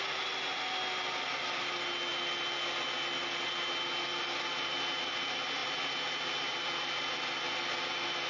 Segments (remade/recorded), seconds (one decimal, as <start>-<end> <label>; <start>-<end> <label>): 0.0-8.3 recorded